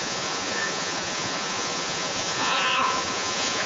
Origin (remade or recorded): remade